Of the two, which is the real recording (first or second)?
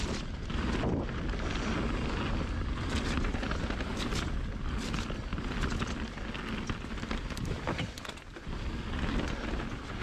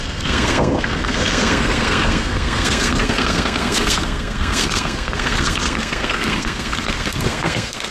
first